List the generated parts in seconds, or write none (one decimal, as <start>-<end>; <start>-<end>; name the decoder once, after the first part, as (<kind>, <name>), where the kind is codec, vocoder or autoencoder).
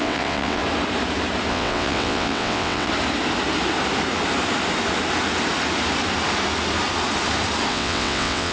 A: 0.0-0.6 (vocoder, WaveNeXt); 1.5-2.9; 7.7-8.5